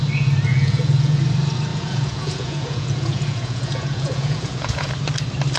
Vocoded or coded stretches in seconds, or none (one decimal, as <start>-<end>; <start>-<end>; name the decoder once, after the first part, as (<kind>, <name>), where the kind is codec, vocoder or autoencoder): 0.5-1.2 (vocoder, Vocos); 1.7-4.9